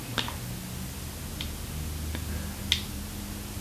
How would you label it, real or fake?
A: real